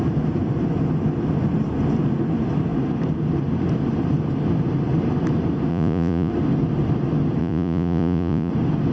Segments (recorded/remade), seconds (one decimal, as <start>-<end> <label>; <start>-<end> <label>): 0.0-5.7 recorded; 5.7-6.3 remade; 6.3-7.4 recorded; 7.4-8.5 remade; 8.5-8.9 recorded